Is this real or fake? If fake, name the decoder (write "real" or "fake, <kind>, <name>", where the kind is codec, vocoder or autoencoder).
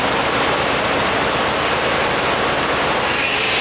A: real